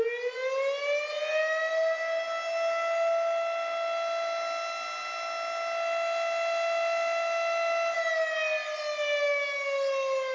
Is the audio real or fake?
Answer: real